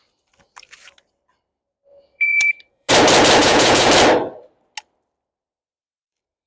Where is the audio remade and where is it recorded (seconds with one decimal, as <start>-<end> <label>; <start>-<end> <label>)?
0.0-1.9 recorded; 1.9-2.9 remade; 2.9-3.4 recorded; 3.4-3.9 remade; 3.9-6.5 recorded